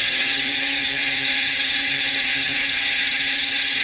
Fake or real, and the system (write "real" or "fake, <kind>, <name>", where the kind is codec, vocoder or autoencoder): fake, vocoder, HiFi-GAN